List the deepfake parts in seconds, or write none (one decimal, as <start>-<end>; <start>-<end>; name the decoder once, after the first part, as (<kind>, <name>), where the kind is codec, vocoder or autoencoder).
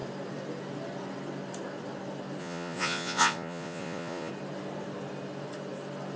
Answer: 2.4-4.3 (vocoder, Vocos)